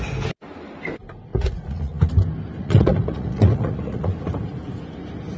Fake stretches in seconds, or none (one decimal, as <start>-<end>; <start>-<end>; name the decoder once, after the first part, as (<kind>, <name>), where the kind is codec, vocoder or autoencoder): 1.3-2.1 (vocoder, Vocos); 2.6-4.1